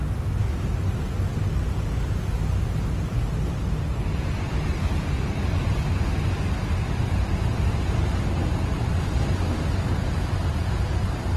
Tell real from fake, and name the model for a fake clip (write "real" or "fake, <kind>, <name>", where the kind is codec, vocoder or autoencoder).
real